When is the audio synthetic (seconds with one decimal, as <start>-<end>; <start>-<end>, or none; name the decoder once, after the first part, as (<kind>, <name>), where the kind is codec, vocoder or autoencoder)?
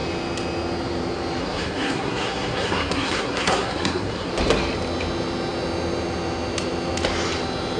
1.4-4.3 (codec, SNAC)